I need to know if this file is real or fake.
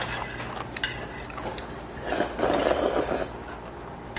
real